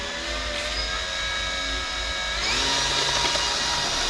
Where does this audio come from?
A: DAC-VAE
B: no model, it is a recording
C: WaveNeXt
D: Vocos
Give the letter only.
B